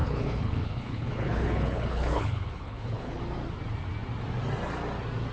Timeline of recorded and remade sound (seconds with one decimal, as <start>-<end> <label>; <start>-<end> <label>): 0.0-3.2 remade; 3.2-5.3 recorded